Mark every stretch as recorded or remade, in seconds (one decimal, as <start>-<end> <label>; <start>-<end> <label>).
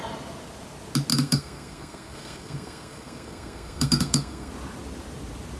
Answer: 0.0-1.1 recorded; 1.1-4.5 remade; 4.5-5.6 recorded